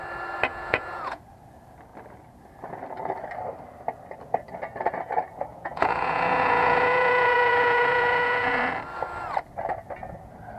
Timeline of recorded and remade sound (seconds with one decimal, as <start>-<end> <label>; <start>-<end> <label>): 0.0-0.5 recorded; 0.5-1.2 remade; 1.2-5.5 recorded; 5.5-8.6 remade; 8.6-10.6 recorded